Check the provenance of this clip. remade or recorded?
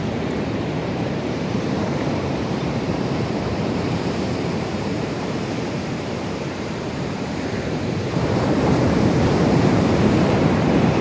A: remade